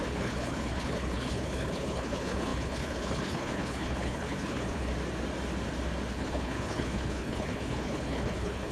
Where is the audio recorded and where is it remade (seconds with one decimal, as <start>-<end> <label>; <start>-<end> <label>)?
0.0-4.9 remade; 4.9-6.1 recorded; 6.1-8.7 remade